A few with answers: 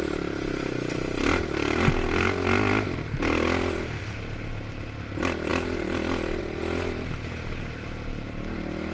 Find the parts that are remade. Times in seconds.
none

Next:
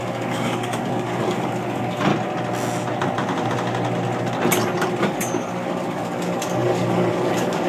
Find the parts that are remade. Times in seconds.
0.0-2.1 (codec, DAC); 5.0-7.7

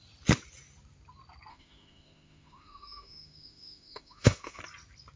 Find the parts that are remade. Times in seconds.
1.5-4.6 (autoencoder, DAC-VAE)

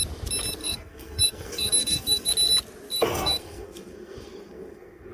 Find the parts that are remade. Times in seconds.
0.6-2.3 (codec, SNAC); 2.9-5.1

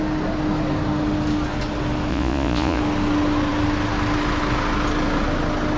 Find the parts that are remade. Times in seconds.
2.1-2.8 (vocoder, Vocos)

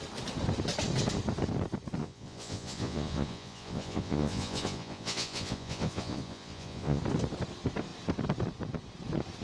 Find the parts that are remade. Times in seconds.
2.0-7.0 (vocoder, Vocos)